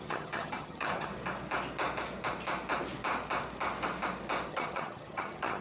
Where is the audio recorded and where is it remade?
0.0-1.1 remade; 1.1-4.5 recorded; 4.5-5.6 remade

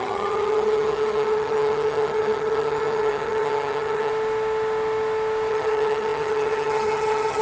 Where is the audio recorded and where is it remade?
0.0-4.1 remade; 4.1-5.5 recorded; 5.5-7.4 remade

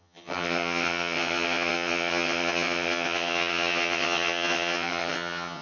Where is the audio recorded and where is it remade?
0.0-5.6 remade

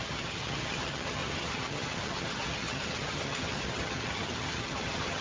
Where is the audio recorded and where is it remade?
0.0-5.2 remade